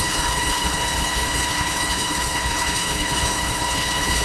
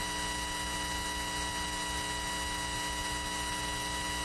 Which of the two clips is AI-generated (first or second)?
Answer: first